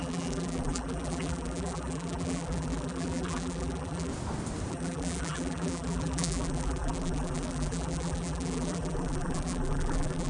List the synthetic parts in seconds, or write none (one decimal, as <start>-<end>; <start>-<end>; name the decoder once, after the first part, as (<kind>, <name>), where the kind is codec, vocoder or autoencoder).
0.0-4.1 (vocoder, BigVGAN v2); 4.7-10.3